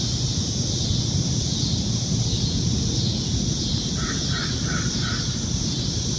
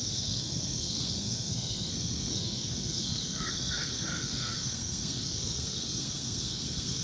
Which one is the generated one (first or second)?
second